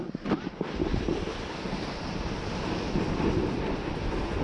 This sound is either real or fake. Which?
real